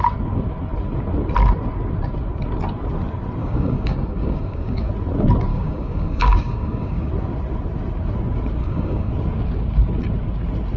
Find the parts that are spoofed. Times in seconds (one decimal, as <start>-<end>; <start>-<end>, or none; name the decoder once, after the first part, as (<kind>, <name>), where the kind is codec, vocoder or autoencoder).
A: 3.4-4.9 (codec, DAC); 5.5-7.1; 8.6-9.1